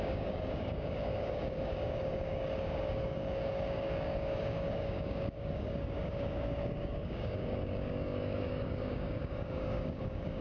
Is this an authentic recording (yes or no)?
no